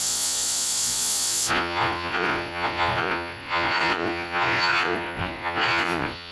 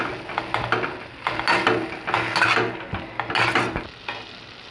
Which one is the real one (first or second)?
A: second